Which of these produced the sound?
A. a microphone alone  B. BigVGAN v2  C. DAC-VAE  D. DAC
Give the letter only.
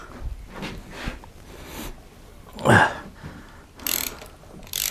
A